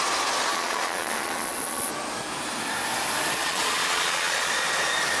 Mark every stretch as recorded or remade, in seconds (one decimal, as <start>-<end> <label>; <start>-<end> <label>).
0.0-0.5 recorded; 0.5-1.9 remade; 1.9-3.4 recorded; 3.4-4.5 remade; 4.5-5.2 recorded